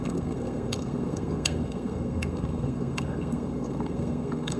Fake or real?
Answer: fake